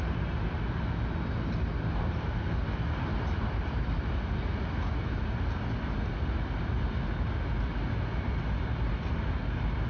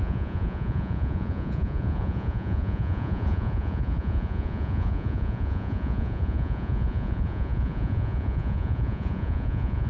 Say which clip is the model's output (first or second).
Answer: second